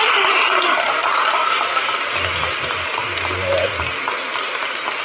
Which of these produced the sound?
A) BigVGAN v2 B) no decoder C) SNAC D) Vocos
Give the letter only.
B